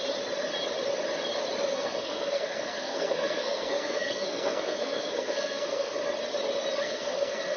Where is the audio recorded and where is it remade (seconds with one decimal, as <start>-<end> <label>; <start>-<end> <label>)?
0.0-1.7 recorded; 1.7-6.0 remade; 6.0-6.8 recorded; 6.8-7.6 remade